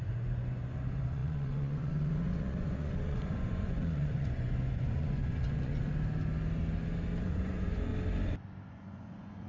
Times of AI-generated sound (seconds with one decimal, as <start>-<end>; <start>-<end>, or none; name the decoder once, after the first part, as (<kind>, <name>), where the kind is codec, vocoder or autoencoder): 0.0-5.7 (vocoder, Vocos); 7.2-7.9; 8.7-9.5